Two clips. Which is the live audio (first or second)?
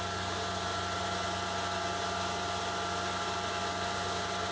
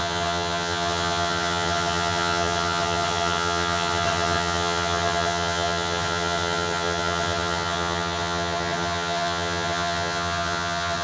first